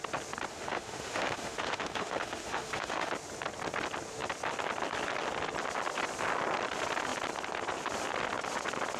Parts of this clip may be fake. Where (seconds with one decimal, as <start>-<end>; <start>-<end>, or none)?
0.5-3.1